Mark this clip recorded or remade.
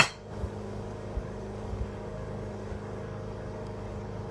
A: remade